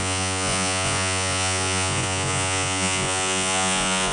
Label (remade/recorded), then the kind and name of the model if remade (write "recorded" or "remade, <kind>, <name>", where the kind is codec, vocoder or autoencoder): remade, vocoder, Vocos